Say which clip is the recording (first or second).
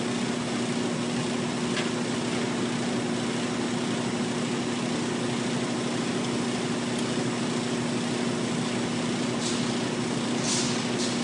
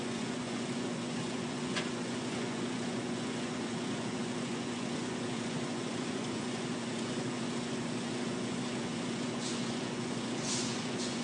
first